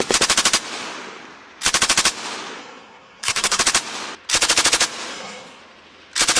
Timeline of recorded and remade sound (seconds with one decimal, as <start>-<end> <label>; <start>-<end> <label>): 0.0-2.6 recorded; 2.6-3.6 remade; 3.6-5.1 recorded; 5.1-5.6 remade; 5.6-6.4 recorded